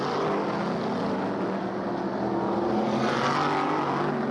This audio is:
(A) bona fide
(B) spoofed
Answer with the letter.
A